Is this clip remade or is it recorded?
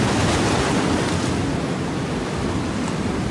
recorded